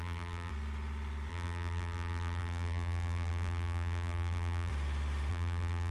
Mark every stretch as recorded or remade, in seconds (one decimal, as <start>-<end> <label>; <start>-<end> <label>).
0.0-0.5 remade; 0.5-1.3 recorded; 1.3-4.7 remade; 4.7-5.3 recorded; 5.3-5.9 remade